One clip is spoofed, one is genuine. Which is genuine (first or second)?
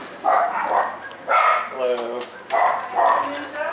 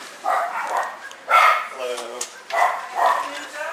first